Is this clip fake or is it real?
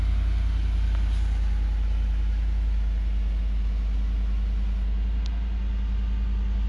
real